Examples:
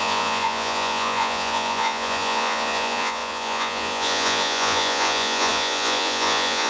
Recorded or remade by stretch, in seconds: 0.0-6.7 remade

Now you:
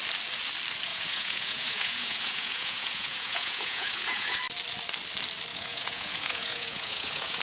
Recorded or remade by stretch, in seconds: 0.0-0.9 recorded; 0.9-4.4 remade; 4.4-5.5 recorded; 5.5-7.4 remade

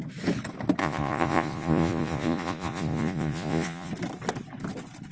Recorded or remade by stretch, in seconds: 0.0-0.8 recorded; 0.8-3.9 remade; 3.9-5.1 recorded

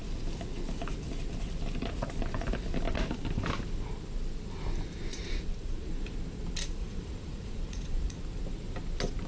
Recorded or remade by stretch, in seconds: 0.0-5.1 recorded; 5.1-5.9 remade; 5.9-6.8 recorded; 6.8-8.2 remade; 8.2-9.3 recorded